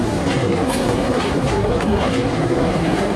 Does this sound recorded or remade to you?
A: remade